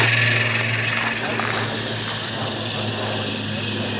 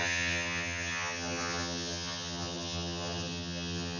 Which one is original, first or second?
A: first